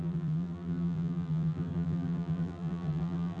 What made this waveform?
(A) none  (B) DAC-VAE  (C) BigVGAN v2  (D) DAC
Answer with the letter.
C